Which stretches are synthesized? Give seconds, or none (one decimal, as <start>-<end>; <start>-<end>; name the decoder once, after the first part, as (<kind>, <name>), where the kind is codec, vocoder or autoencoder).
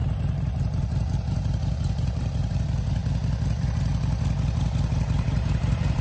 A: 0.0-3.0 (vocoder, BigVGAN v2); 4.9-6.0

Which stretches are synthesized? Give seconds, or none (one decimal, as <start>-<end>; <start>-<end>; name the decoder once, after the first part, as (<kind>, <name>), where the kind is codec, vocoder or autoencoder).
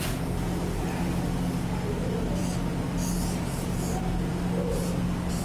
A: none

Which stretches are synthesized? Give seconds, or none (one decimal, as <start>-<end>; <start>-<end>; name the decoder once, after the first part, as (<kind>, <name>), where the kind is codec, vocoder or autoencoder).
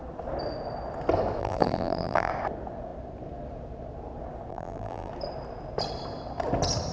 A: 1.4-2.3 (vocoder, BigVGAN v2); 4.5-5.1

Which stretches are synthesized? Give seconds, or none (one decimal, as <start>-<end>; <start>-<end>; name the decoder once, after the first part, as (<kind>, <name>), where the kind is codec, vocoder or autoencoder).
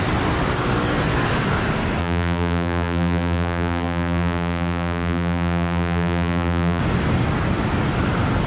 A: 2.0-6.8 (vocoder, BigVGAN v2)